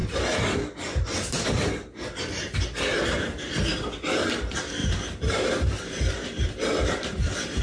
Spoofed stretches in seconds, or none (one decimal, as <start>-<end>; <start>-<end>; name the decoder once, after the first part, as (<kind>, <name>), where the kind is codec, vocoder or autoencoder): 4.8-7.6 (vocoder, BigVGAN v2)

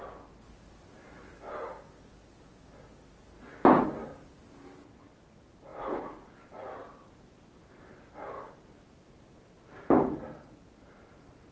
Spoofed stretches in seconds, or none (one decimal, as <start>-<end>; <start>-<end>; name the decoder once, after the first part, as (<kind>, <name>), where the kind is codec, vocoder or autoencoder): none